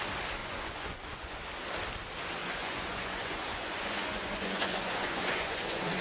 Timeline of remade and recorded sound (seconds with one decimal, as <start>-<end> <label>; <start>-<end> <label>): 0.0-0.4 recorded; 0.4-1.4 remade; 1.4-2.4 recorded; 2.4-6.0 remade